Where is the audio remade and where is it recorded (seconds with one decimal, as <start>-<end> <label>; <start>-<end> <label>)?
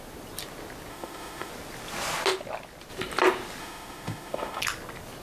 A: 0.0-0.9 recorded; 0.9-1.5 remade; 1.5-3.6 recorded; 3.6-4.6 remade; 4.6-5.2 recorded